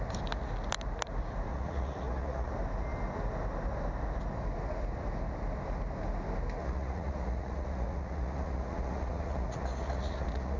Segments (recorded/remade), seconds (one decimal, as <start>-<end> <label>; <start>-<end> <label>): 0.0-1.5 recorded; 1.5-2.5 remade; 2.5-6.6 recorded; 6.6-10.6 remade